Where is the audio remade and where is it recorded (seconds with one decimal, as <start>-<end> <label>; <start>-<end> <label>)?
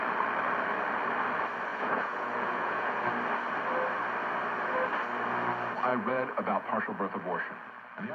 0.0-1.7 recorded; 1.7-3.0 remade; 3.0-5.9 recorded; 5.9-6.8 remade; 6.8-8.1 recorded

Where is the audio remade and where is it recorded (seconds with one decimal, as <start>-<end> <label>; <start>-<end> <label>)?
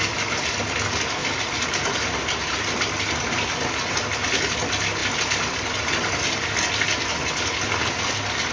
0.0-8.5 recorded